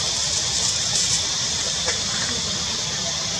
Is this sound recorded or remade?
recorded